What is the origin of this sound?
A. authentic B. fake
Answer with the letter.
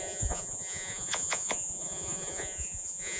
B